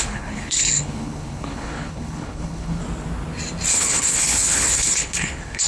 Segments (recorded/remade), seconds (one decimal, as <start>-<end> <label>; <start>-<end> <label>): 0.0-2.8 remade; 2.8-3.7 recorded; 3.7-5.7 remade